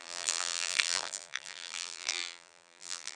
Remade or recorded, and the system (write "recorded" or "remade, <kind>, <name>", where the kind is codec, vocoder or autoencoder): remade, vocoder, BigVGAN v2